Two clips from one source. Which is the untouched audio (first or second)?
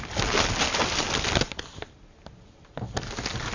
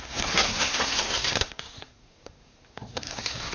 first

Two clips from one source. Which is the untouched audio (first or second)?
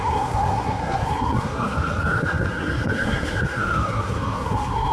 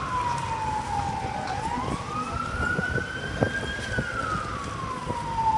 second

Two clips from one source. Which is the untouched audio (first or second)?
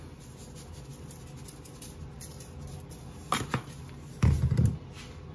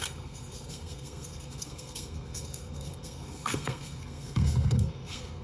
first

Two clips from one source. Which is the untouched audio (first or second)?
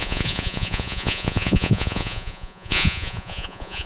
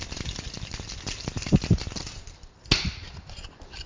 second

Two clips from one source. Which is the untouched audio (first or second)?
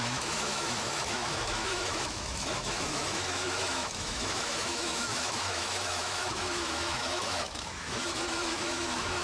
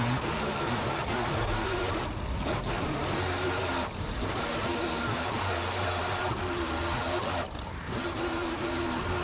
second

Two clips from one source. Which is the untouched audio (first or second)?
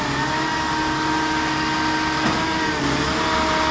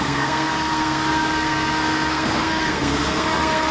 first